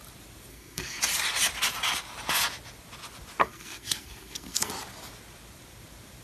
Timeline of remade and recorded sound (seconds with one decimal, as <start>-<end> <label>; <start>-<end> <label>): 0.0-0.5 recorded; 0.5-1.0 remade; 1.0-3.4 recorded; 3.4-4.7 remade; 4.7-6.2 recorded